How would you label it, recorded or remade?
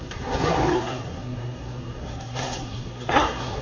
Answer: remade